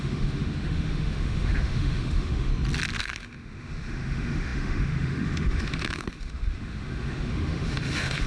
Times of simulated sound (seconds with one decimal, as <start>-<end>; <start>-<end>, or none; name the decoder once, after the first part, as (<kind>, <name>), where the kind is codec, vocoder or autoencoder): 0.0-2.5 (autoencoder, DAC-VAE); 3.0-8.3